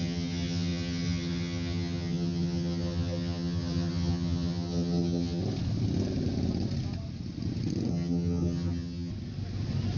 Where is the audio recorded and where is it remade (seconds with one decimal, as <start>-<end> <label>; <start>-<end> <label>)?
0.0-5.4 remade; 5.4-7.9 recorded; 7.9-9.1 remade; 9.1-10.0 recorded